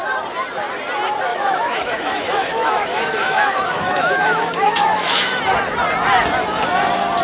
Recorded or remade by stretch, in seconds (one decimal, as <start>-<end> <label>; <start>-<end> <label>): 0.0-1.3 recorded; 1.3-5.4 remade; 5.4-7.2 recorded